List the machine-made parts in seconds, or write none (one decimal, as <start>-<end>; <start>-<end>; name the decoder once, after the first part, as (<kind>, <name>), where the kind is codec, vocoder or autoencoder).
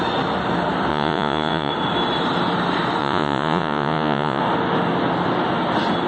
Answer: 0.9-1.7 (vocoder, Vocos); 3.0-4.4